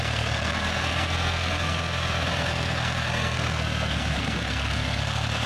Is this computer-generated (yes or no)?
yes